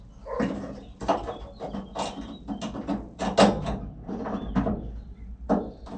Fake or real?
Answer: real